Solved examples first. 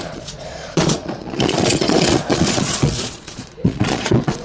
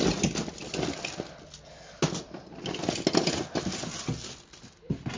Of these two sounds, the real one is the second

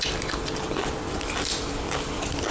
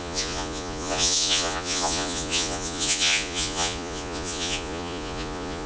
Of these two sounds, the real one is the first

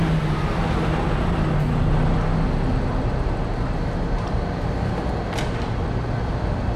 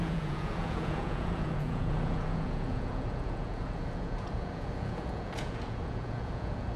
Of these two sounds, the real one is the first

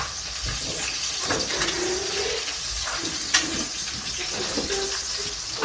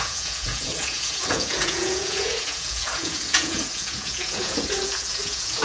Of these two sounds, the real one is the first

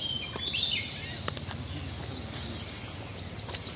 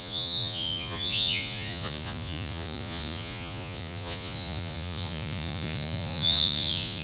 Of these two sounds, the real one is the first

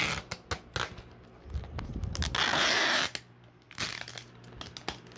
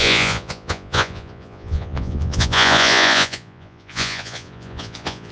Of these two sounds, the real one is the first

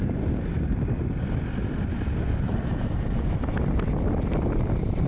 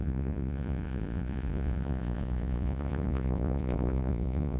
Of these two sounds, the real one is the first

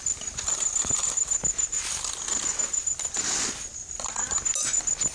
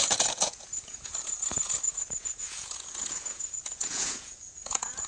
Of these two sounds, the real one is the first